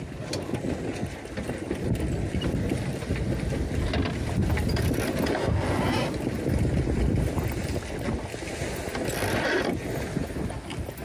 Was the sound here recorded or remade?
recorded